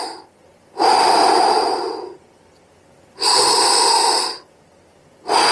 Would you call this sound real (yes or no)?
yes